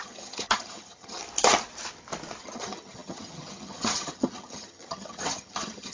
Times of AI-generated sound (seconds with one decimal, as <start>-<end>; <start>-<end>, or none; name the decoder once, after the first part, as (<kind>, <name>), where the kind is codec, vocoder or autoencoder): 0.0-1.2 (vocoder, HiFi-GAN); 2.4-5.9